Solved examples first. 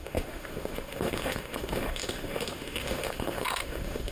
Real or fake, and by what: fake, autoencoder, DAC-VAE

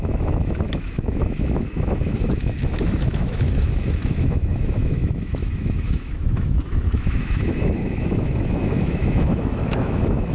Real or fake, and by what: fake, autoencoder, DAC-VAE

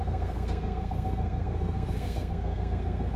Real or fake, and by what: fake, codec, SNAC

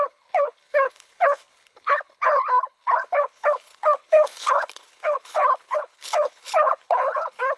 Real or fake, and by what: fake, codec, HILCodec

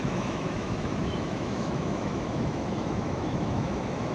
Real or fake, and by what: fake, autoencoder, DAC-VAE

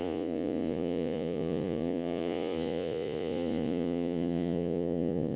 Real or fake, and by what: fake, vocoder, Vocos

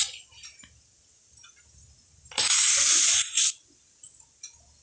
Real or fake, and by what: real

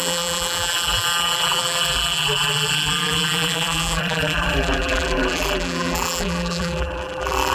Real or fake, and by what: fake, vocoder, BigVGAN v2